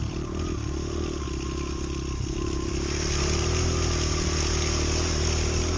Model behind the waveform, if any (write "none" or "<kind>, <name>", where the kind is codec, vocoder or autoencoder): none